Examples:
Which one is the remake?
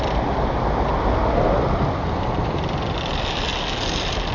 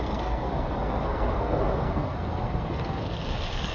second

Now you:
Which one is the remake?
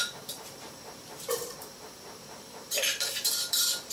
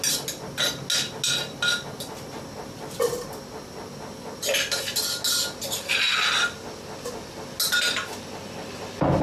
first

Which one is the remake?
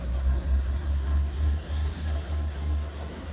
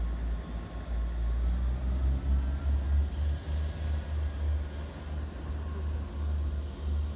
first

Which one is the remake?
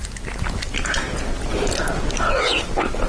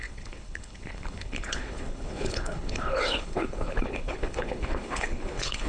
second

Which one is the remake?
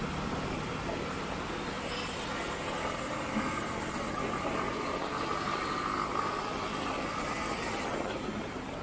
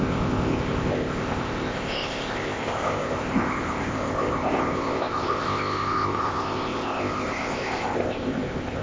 second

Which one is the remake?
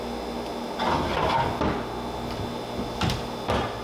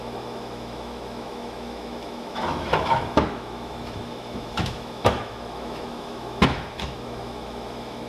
second